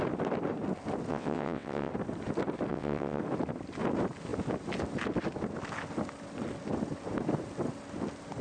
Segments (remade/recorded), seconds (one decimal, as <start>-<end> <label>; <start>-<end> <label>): 0.0-1.1 recorded; 1.1-1.9 remade; 1.9-2.7 recorded; 2.7-3.2 remade; 3.2-8.4 recorded